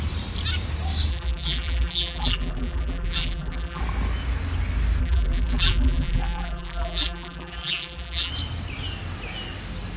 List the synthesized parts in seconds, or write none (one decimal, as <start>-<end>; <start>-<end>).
1.1-3.8; 5.0-8.3